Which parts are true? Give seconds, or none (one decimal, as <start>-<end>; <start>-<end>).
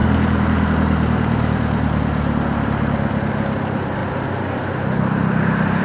0.0-5.8